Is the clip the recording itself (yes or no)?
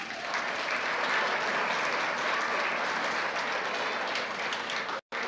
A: yes